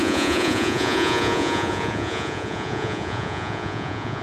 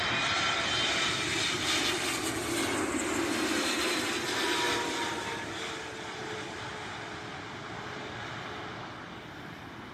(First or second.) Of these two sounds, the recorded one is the second